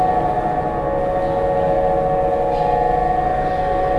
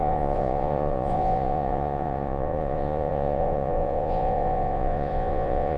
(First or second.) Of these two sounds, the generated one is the second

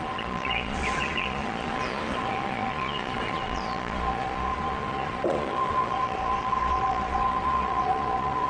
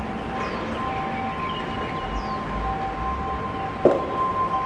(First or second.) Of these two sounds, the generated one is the first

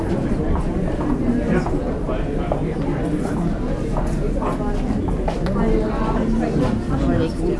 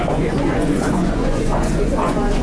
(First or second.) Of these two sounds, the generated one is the second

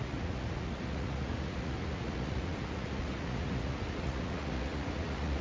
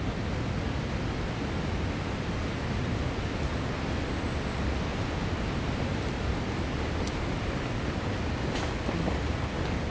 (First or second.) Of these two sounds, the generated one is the first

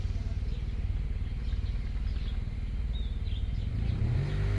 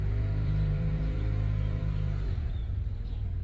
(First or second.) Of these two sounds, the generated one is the second